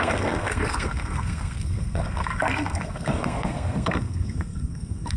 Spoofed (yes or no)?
yes